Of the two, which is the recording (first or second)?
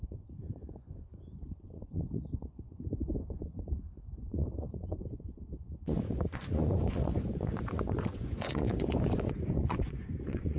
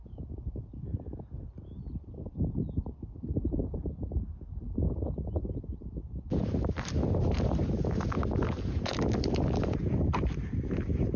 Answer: second